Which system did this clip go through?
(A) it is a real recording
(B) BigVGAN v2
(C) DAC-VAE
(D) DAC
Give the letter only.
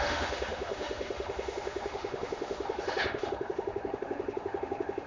C